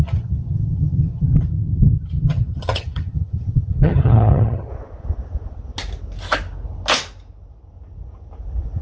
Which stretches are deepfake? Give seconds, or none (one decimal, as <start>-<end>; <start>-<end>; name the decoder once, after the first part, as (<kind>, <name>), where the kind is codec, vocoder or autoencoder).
0.0-4.7 (vocoder, HiFi-GAN)